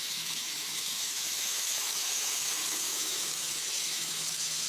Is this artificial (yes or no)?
yes